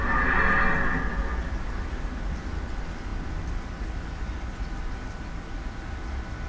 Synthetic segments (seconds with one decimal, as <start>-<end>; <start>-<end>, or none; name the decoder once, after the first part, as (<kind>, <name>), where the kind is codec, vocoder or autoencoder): none